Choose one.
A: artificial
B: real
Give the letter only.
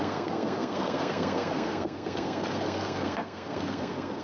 A